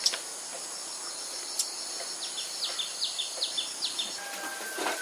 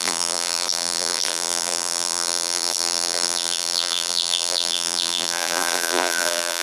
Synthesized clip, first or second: second